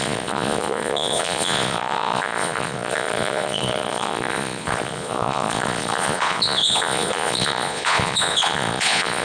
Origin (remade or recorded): remade